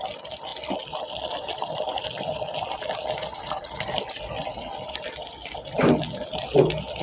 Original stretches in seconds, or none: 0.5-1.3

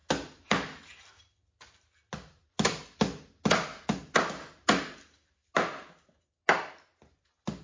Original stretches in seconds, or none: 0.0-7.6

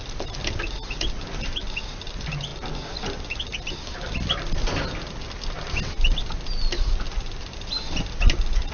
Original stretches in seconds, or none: 0.0-8.7